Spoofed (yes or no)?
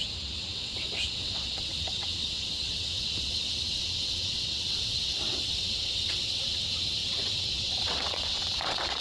yes